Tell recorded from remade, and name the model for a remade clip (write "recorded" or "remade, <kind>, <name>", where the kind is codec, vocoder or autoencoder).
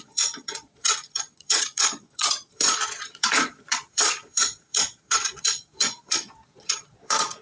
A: remade, vocoder, Vocos